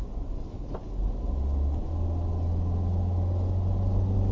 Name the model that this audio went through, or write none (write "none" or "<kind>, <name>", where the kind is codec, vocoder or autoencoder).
none